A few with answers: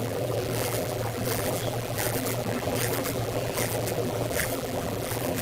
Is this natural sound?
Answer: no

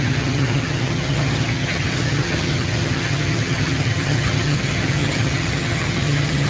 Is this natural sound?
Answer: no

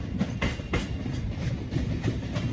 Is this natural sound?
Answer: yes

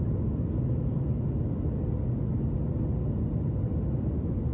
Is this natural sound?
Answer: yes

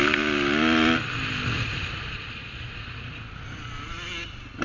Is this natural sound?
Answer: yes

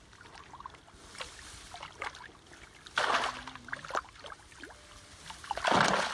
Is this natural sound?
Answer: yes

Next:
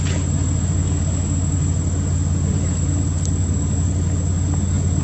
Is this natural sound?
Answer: yes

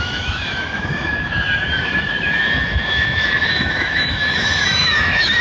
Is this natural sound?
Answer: no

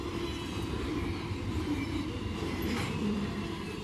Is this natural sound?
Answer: yes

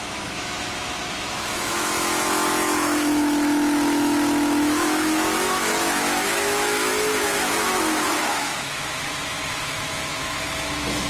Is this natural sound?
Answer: no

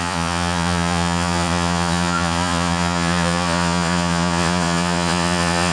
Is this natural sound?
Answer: no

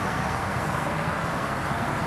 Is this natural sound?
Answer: no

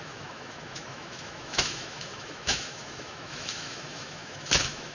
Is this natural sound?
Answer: no